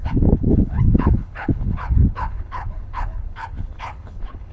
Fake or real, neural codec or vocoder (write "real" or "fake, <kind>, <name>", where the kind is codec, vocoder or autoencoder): fake, codec, HILCodec